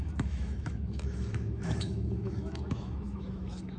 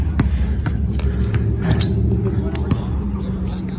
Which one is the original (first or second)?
second